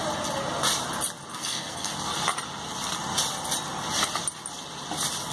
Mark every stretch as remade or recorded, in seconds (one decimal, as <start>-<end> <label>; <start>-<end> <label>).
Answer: 0.0-1.3 recorded; 1.3-1.9 remade; 1.9-5.3 recorded